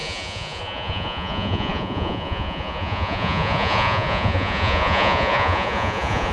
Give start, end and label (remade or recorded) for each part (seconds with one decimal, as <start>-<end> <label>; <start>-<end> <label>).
0.0-6.3 remade